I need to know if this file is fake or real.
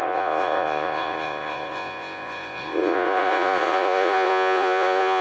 fake